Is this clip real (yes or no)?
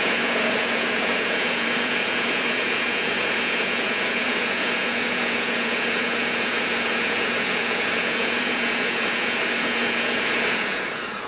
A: no